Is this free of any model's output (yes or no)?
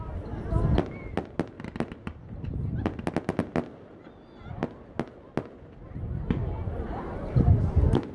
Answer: yes